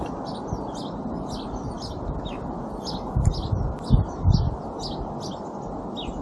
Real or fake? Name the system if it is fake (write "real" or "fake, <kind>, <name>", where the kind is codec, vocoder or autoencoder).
real